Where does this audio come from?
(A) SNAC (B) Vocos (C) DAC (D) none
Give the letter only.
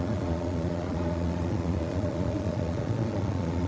B